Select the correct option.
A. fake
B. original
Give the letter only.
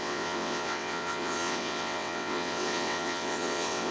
A